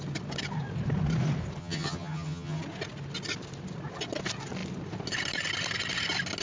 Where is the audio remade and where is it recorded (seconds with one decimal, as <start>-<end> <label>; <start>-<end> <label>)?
0.0-1.6 recorded; 1.6-2.6 remade; 2.6-6.4 recorded